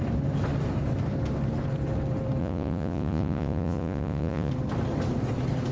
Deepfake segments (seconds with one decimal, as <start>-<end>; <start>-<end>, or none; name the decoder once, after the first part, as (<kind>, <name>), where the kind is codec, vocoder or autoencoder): 2.4-4.5 (vocoder, Vocos)